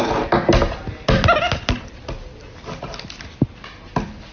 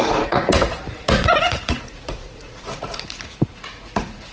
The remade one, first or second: second